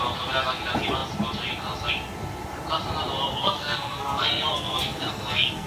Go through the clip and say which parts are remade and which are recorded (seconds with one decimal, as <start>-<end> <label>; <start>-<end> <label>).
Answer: 0.0-3.3 recorded; 3.3-5.7 remade